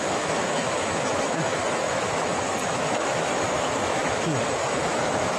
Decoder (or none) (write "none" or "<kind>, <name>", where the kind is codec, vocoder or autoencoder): autoencoder, DAC-VAE